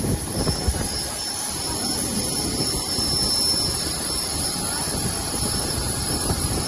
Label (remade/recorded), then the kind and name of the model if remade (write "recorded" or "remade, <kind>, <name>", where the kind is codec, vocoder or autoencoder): remade, vocoder, BigVGAN v2